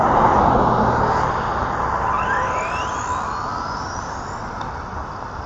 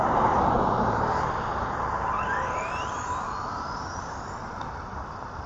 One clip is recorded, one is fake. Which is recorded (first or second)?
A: first